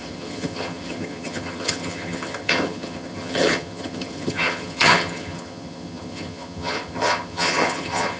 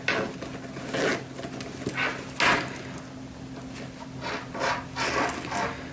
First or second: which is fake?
first